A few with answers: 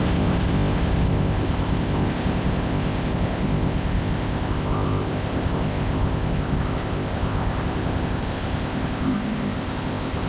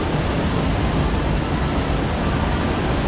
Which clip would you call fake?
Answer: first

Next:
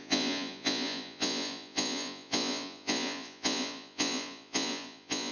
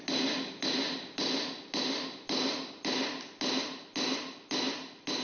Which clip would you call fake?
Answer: first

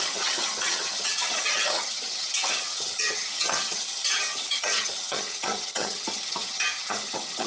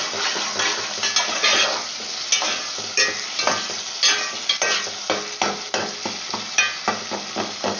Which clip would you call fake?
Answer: first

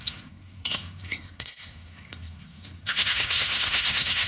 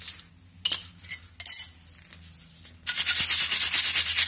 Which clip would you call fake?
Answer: first